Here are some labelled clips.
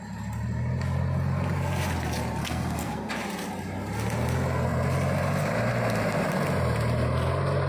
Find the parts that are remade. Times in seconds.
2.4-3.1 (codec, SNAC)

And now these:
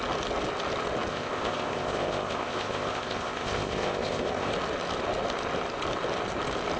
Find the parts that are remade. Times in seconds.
1.1-4.5 (codec, ZipCodec)

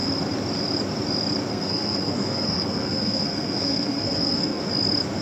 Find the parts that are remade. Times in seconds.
1.5-4.6 (codec, SNAC)